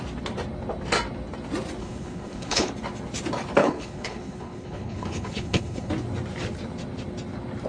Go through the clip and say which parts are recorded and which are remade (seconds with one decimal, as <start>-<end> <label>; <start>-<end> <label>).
0.0-1.8 recorded; 1.8-2.7 remade; 2.7-3.6 recorded; 3.6-5.9 remade; 5.9-7.7 recorded